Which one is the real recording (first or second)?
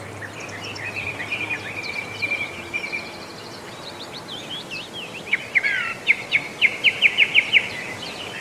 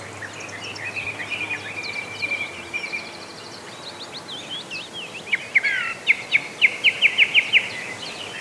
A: second